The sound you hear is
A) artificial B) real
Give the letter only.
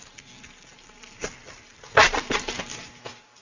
B